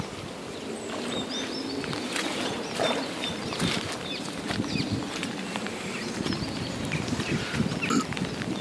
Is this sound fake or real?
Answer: real